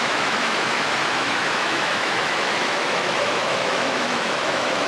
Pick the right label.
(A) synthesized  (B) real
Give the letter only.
A